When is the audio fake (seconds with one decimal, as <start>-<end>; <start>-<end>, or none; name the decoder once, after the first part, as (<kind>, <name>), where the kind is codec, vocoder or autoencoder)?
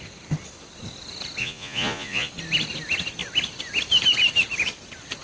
1.4-2.3 (vocoder, Vocos)